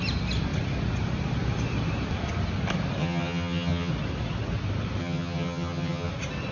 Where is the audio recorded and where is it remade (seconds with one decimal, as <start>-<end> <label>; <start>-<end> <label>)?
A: 0.0-3.0 recorded; 3.0-3.9 remade; 3.9-5.0 recorded; 5.0-6.1 remade; 6.1-6.5 recorded

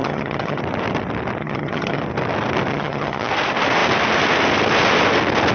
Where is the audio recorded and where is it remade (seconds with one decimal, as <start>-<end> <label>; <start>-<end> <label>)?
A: 0.0-0.6 remade; 0.6-1.4 recorded; 1.4-2.0 remade; 2.0-2.7 recorded; 2.7-3.3 remade; 3.3-5.5 recorded

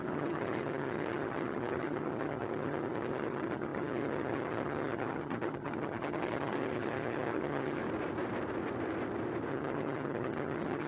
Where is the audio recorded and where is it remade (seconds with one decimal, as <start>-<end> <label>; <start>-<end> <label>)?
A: 0.0-7.8 remade; 7.8-9.5 recorded; 9.5-10.9 remade

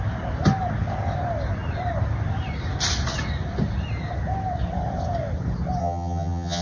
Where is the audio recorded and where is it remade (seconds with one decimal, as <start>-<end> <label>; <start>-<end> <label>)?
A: 0.0-5.8 recorded; 5.8-6.6 remade